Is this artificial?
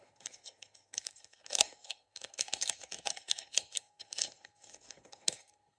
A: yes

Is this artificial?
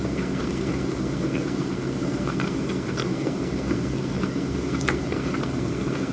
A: yes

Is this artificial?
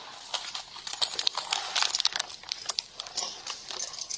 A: no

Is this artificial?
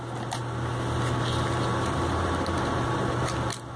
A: no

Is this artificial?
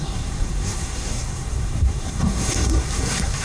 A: yes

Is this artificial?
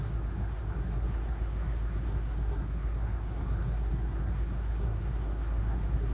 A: yes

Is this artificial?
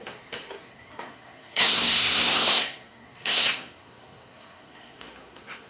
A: yes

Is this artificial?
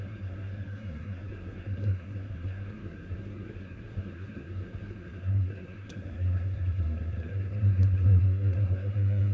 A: yes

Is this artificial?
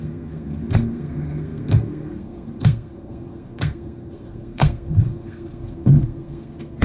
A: yes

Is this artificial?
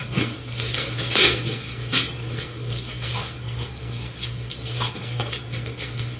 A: yes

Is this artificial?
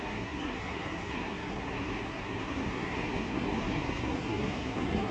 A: yes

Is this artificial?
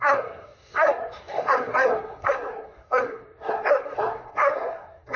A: yes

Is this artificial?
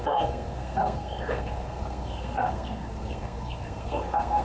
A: yes